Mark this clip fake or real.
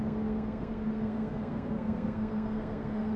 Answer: fake